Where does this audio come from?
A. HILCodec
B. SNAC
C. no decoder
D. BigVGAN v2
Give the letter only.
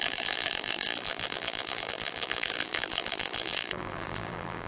D